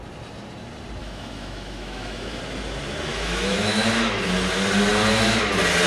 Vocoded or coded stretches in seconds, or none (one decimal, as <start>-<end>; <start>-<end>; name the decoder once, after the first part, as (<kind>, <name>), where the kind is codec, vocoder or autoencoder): 1.0-2.4 (autoencoder, DAC-VAE); 3.1-3.8